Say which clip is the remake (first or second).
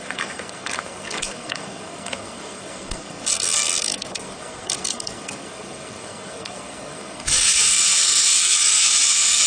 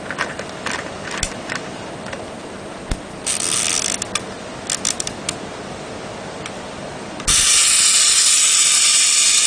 first